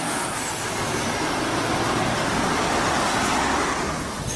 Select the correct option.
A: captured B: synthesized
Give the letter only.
A